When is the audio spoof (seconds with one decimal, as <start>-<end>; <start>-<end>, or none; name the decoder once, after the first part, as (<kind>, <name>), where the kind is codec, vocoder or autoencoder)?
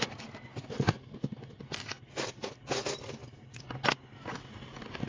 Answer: none